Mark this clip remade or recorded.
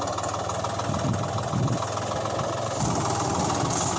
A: recorded